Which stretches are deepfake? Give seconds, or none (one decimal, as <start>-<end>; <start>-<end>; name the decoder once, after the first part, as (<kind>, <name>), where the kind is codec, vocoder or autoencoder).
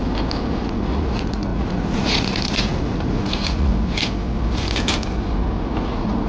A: 0.6-3.7 (vocoder, Vocos); 5.8-6.3